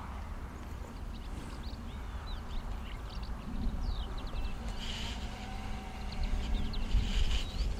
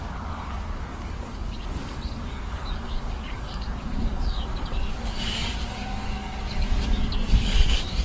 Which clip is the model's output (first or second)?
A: second